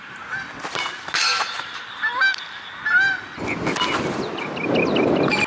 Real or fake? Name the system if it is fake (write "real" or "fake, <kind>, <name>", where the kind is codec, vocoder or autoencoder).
real